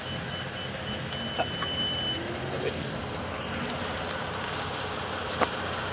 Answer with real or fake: real